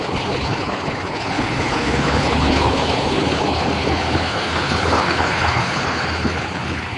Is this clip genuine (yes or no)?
no